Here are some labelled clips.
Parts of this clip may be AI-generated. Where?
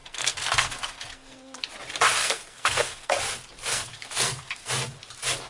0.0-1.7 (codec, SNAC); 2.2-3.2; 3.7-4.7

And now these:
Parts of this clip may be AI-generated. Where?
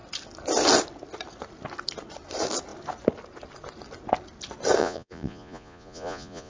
4.8-6.5 (vocoder, Vocos)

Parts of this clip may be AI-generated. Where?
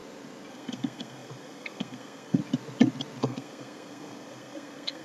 0.5-2.4 (codec, SNAC); 3.2-5.0